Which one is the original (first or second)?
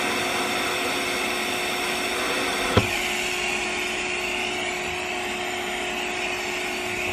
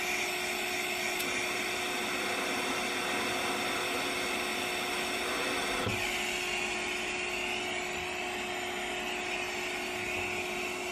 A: second